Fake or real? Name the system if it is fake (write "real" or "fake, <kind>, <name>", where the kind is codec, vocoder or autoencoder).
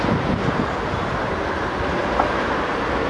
real